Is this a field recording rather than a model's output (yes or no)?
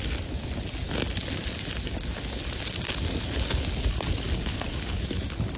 yes